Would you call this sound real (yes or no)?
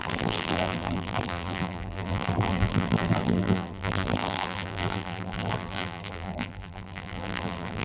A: no